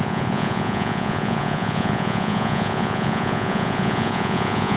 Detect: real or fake fake